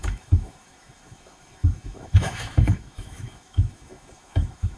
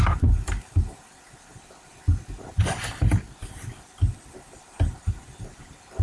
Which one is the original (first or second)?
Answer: second